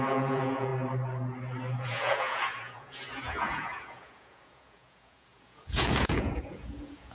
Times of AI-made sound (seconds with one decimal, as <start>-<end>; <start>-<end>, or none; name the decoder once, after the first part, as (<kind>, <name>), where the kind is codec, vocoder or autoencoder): 0.0-0.7 (vocoder, Vocos); 1.8-7.1